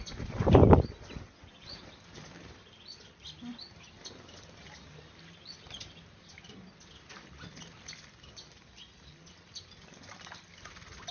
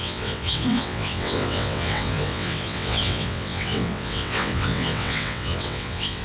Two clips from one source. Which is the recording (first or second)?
first